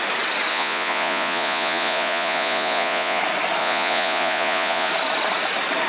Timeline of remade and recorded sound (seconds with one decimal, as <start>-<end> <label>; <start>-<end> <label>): 0.0-0.5 recorded; 0.5-3.2 remade; 3.2-3.6 recorded; 3.6-4.9 remade; 4.9-5.9 recorded